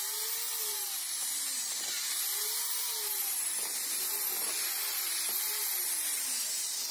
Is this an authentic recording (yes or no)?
yes